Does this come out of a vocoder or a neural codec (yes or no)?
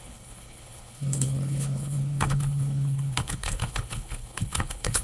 yes